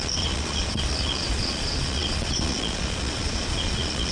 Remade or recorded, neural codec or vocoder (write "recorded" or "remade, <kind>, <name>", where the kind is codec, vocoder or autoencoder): remade, vocoder, Vocos